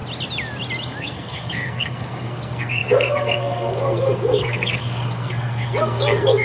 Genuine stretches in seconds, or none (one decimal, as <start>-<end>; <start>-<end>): 0.0-1.0